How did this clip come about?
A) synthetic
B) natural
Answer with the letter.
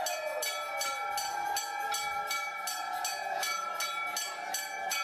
B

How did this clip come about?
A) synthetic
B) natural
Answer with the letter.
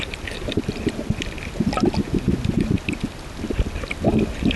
B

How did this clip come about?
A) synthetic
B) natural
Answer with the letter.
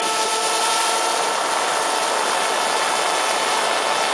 B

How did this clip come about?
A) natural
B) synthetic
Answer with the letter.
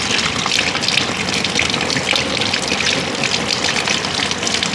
A